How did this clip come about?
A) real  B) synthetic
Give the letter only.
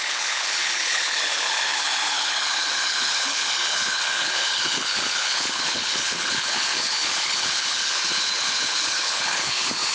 B